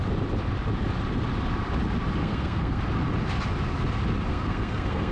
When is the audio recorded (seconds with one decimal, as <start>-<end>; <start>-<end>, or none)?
0.0-2.2; 2.8-4.3